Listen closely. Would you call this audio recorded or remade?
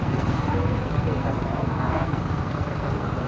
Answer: remade